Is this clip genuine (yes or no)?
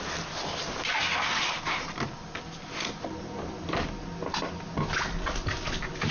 yes